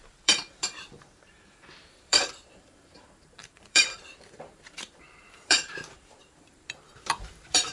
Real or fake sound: fake